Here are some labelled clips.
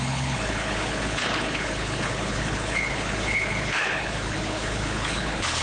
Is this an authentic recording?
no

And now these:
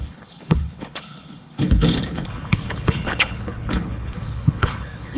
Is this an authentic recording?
no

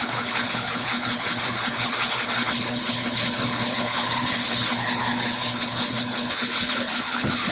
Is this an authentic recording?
no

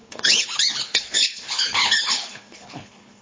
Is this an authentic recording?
no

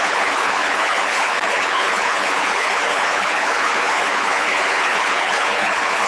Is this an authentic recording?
no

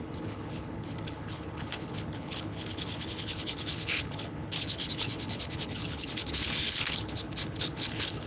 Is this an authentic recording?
no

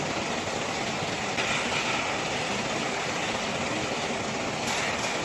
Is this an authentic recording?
yes